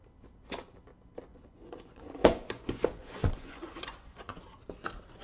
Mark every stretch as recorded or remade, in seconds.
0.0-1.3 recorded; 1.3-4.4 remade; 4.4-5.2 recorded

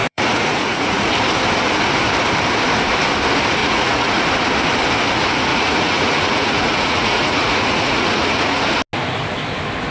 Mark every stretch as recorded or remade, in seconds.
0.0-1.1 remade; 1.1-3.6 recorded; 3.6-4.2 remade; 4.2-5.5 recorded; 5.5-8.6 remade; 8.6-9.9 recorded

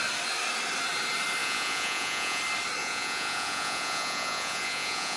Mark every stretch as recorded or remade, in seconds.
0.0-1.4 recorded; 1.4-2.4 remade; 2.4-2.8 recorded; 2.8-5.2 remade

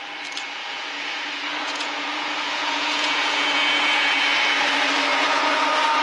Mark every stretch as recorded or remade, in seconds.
0.0-0.6 recorded; 0.6-4.2 remade; 4.2-5.1 recorded; 5.1-5.6 remade; 5.6-6.0 recorded

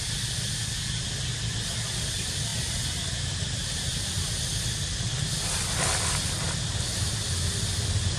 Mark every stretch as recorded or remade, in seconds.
0.0-8.2 recorded

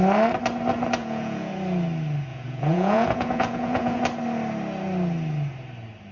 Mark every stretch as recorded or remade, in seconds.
0.0-1.0 recorded; 1.0-1.5 remade; 1.5-2.3 recorded; 2.3-4.0 remade; 4.0-6.1 recorded

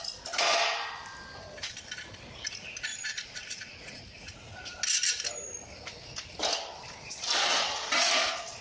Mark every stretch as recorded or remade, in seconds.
0.0-2.9 recorded; 2.9-4.4 remade; 4.4-8.6 recorded

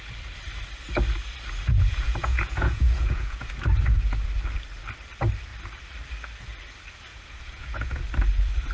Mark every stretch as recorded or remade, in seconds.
0.0-1.7 recorded; 1.7-3.5 remade; 3.5-7.1 recorded; 7.1-8.0 remade; 8.0-8.7 recorded